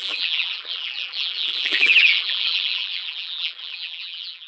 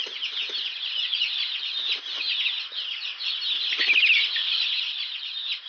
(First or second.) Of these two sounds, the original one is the second